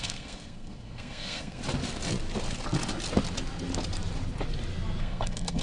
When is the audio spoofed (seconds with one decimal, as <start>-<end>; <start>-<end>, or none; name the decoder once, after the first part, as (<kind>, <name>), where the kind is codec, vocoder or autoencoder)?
0.0-1.6 (codec, SNAC); 5.0-5.6

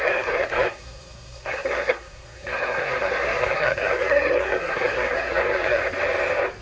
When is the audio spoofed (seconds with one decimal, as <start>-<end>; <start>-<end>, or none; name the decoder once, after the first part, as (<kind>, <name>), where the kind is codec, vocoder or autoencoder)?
0.0-5.8 (codec, SNAC)

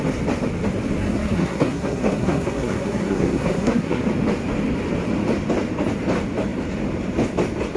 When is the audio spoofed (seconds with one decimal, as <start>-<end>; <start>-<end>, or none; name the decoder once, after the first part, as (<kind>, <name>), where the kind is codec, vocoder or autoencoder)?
1.0-4.1 (codec, SNAC)

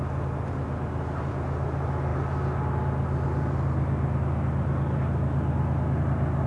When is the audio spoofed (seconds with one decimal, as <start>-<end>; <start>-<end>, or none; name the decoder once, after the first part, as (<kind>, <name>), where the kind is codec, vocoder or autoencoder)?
none